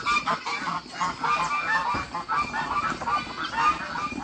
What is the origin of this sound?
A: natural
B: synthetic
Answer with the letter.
A